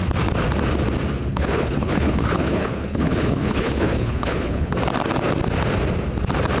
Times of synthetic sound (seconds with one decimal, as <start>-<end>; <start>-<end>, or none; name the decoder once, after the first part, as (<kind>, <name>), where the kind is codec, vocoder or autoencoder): 1.3-4.7 (codec, HILCodec)